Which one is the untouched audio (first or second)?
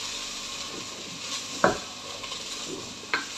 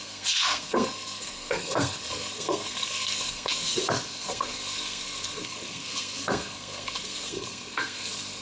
first